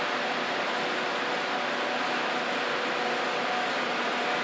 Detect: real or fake real